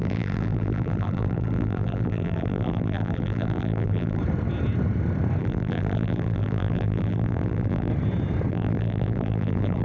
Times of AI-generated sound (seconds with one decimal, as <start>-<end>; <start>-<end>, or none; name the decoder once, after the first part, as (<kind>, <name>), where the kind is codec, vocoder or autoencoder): 0.0-4.2 (vocoder, BigVGAN v2); 5.4-7.9; 8.5-9.8